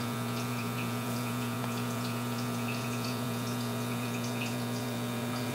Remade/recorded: remade